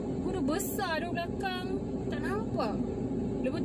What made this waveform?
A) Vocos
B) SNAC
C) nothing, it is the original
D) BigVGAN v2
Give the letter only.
C